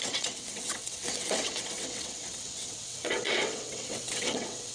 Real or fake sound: fake